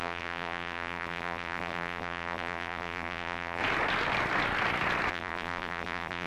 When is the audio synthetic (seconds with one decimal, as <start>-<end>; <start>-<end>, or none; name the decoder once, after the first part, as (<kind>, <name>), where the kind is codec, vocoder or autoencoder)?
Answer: 0.0-3.6 (vocoder, BigVGAN v2); 5.1-6.3

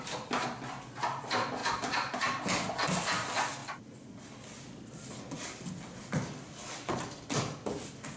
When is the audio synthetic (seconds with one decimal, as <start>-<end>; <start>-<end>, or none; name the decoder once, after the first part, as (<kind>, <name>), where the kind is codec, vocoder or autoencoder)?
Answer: none